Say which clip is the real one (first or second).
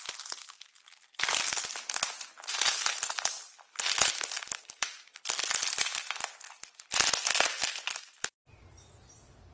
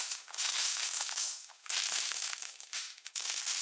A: first